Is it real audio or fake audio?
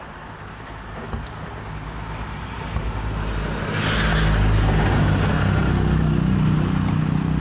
real